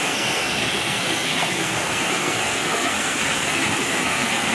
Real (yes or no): no